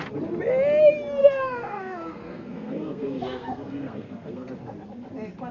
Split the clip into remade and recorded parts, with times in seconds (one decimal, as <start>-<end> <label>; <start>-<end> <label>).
0.0-1.2 recorded; 1.2-4.5 remade; 4.5-5.5 recorded